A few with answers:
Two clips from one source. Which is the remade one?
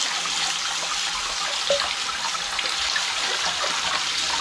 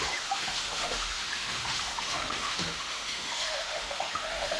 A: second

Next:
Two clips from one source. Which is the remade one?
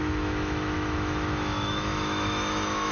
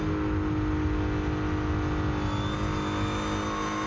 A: first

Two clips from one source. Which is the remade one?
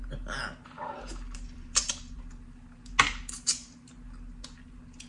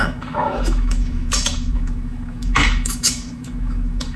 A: second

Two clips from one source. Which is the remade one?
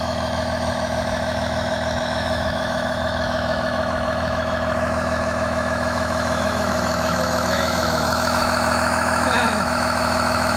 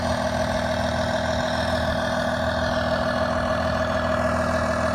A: first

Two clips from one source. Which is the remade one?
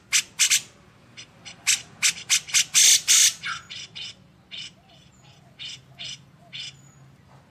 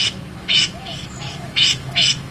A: second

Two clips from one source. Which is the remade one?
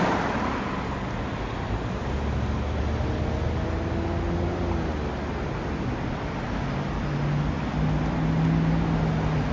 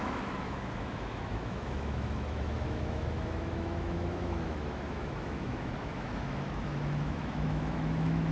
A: second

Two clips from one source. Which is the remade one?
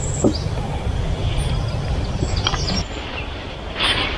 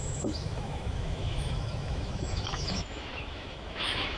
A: second